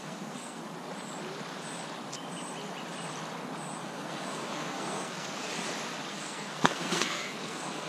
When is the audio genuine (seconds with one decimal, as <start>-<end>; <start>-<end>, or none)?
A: 0.6-3.8; 5.5-6.1